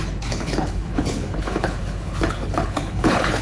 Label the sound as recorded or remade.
remade